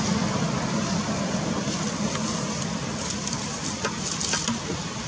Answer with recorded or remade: recorded